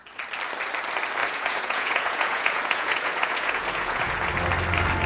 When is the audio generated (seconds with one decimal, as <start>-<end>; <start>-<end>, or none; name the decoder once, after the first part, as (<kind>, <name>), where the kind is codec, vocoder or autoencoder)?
1.2-4.3 (vocoder, Vocos)